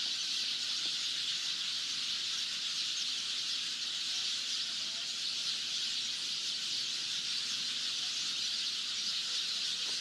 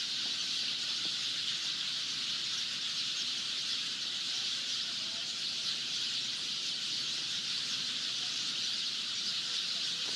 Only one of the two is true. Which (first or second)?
first